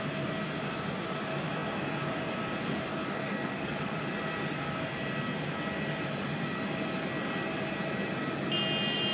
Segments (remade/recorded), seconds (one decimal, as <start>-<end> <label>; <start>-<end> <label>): 0.0-2.9 recorded; 2.9-4.0 remade; 4.0-9.1 recorded